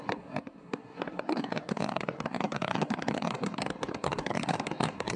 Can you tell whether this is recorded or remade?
remade